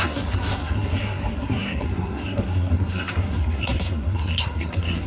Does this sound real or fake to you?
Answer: fake